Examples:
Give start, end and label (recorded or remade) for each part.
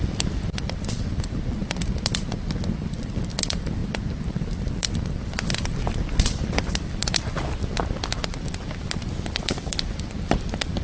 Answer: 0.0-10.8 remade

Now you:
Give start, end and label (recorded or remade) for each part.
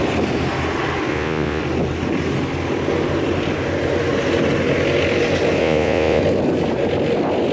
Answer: 0.0-1.1 recorded; 1.1-1.6 remade; 1.6-5.6 recorded; 5.6-6.2 remade; 6.2-7.5 recorded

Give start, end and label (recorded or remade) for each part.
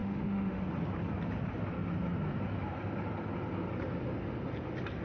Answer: 0.0-0.6 remade; 0.6-5.0 recorded